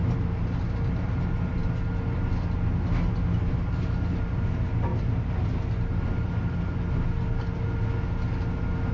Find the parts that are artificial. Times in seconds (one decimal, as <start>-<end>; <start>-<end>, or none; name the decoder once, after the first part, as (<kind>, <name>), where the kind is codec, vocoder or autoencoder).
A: none